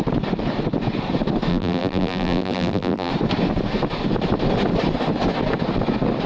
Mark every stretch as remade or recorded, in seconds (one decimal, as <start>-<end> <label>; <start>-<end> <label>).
0.0-1.5 recorded; 1.5-3.1 remade; 3.1-6.3 recorded